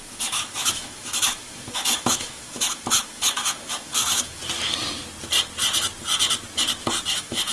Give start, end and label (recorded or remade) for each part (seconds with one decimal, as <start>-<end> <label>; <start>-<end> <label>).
0.0-4.4 remade; 4.4-7.1 recorded; 7.1-7.5 remade